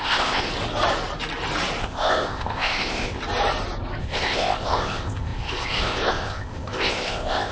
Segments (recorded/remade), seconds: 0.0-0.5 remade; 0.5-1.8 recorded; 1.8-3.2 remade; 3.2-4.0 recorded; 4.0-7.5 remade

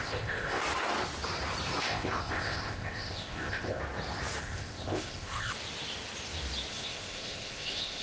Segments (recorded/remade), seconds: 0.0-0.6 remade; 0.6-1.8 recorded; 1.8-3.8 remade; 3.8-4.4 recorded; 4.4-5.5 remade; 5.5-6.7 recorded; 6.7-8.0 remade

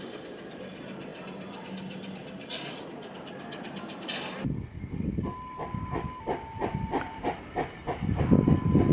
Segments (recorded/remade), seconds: 0.0-8.9 recorded